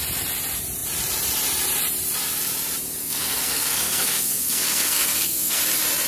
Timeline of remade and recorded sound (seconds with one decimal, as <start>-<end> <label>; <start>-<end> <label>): 0.0-3.0 recorded; 3.0-5.6 remade; 5.6-6.1 recorded